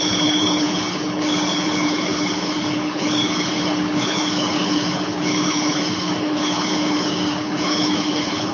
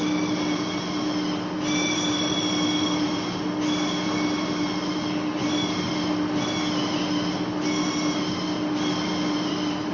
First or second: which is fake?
first